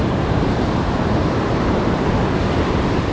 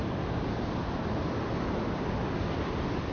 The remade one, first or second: first